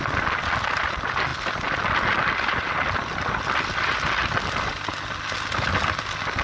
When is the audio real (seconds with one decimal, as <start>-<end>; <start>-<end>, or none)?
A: 0.0-6.4